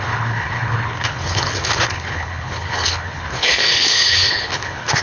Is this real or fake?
fake